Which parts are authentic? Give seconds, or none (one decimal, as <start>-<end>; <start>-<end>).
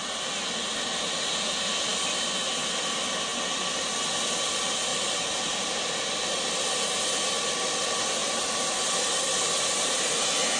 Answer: 0.0-8.2; 10.2-10.6